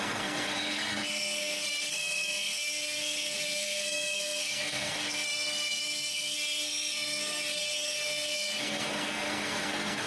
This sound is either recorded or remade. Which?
remade